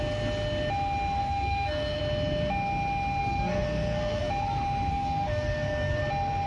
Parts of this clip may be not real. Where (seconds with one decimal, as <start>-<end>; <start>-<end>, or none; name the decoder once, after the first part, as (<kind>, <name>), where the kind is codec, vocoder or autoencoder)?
1.2-2.0 (codec, SNAC); 3.2-4.2; 4.9-6.0